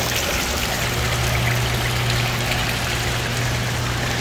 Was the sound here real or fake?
real